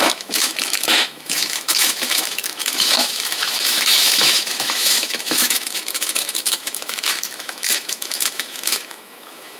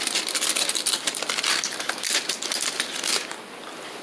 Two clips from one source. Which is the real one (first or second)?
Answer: second